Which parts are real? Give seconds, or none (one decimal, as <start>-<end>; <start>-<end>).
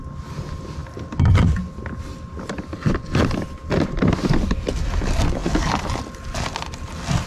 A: 0.0-7.3